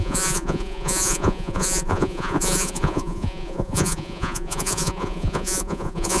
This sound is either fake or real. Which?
fake